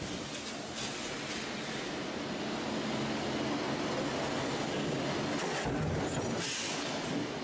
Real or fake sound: real